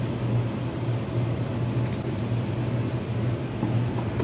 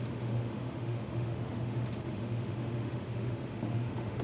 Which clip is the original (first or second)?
first